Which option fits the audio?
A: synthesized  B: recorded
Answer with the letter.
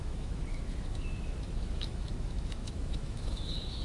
A